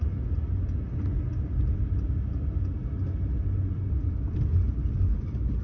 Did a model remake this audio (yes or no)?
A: no